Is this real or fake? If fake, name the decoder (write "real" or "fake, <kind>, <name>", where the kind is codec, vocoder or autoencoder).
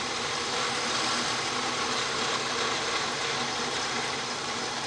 fake, vocoder, BigVGAN v2